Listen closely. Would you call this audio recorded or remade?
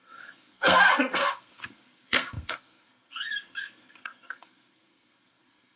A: remade